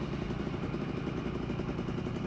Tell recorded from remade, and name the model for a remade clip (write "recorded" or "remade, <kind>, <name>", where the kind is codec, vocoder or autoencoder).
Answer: recorded